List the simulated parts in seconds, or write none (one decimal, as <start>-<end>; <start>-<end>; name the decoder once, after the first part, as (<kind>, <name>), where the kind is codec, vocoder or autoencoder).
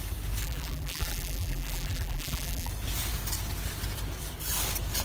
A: 0.4-2.7 (vocoder, BigVGAN v2)